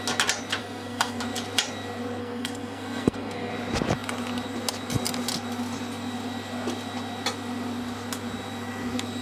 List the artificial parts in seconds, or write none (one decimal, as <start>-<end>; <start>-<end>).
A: 0.6-1.2; 2.2-3.5